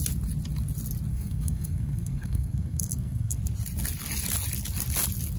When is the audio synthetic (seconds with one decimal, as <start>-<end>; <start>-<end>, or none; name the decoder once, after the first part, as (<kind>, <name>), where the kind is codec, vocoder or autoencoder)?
1.1-3.4 (codec, SNAC)